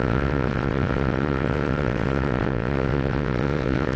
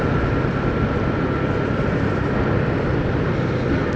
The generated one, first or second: first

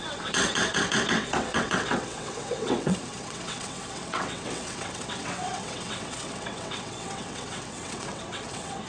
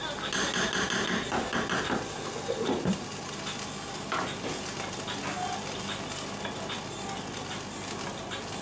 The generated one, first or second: first